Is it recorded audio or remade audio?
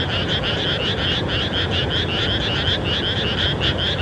recorded